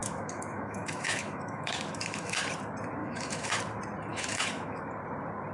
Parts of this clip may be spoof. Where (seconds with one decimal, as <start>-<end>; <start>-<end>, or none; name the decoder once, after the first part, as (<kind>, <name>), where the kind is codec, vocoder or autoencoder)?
0.0-2.4 (autoencoder, DAC-VAE); 3.0-3.6; 4.1-4.8